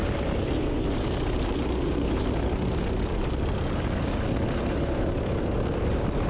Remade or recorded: recorded